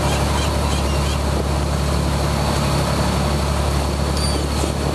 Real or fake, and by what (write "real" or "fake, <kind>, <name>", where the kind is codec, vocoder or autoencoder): real